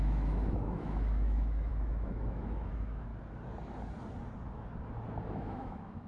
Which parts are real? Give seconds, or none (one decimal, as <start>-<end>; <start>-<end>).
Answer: 3.1-5.3